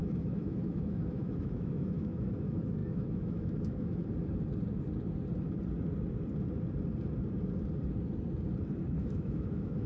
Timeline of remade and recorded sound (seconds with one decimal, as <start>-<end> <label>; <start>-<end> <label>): 0.0-4.0 remade; 4.0-9.0 recorded; 9.0-9.9 remade